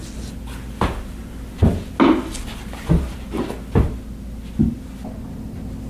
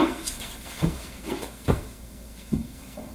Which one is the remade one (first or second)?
second